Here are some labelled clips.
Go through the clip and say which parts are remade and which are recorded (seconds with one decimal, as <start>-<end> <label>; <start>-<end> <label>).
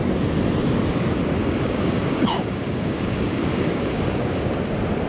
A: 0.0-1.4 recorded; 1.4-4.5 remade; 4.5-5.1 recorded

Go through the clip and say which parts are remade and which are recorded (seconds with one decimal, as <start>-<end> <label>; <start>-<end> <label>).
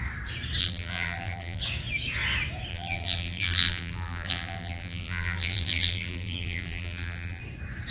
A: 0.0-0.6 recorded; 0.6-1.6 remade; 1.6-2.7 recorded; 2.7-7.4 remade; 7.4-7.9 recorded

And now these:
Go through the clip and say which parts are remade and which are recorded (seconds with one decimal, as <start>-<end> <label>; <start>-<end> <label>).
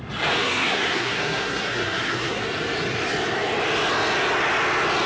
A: 0.0-0.4 recorded; 0.4-2.4 remade; 2.4-5.1 recorded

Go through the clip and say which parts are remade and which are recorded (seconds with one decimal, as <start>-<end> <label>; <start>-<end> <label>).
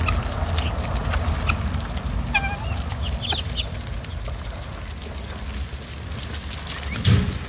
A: 0.0-7.5 recorded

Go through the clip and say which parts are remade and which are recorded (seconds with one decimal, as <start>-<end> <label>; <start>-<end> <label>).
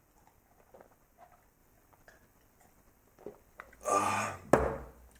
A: 0.0-5.2 recorded